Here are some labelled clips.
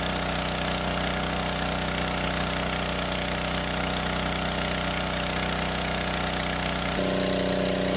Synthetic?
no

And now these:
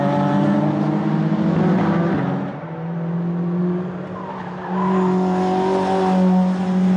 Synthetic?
no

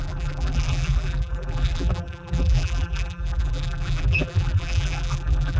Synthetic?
yes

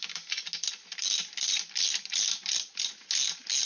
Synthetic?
no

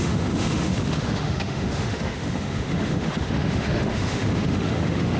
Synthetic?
yes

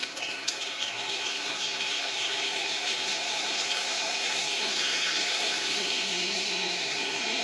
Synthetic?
yes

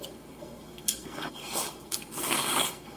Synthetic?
yes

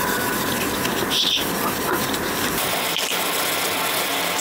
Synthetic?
no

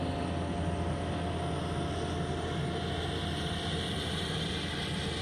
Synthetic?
no